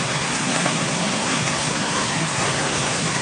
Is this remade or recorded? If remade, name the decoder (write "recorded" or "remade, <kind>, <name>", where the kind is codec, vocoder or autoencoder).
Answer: remade, codec, SNAC